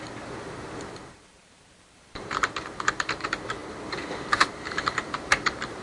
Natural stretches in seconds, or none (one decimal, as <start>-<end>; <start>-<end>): none